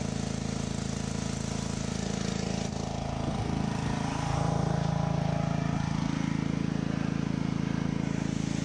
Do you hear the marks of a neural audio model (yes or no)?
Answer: no